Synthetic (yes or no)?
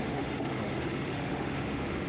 yes